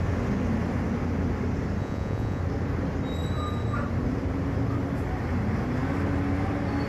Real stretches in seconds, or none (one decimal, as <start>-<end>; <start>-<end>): 0.0-1.8; 2.4-6.9